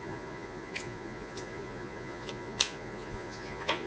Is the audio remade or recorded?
remade